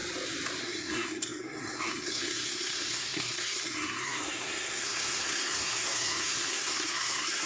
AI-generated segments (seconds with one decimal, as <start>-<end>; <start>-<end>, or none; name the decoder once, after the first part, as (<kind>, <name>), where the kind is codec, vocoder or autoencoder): 0.6-7.5 (codec, SNAC)